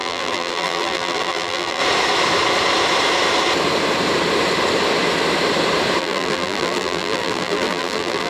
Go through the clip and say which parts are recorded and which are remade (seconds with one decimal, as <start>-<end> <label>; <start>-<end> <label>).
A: 0.0-1.8 remade; 1.8-6.0 recorded; 6.0-8.3 remade